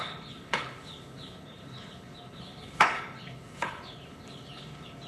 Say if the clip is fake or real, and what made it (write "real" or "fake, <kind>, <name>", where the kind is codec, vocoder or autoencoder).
fake, codec, HILCodec